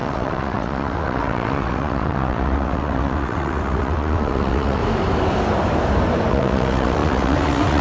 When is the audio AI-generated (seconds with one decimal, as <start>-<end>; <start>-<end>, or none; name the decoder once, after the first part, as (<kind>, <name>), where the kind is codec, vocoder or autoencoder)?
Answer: 0.0-4.8 (vocoder, WaveNeXt); 6.3-7.8